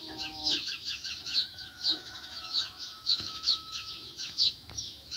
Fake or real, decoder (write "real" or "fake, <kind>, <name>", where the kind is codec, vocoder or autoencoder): fake, autoencoder, DAC-VAE